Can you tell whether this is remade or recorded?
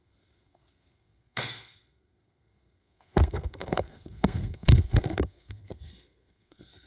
remade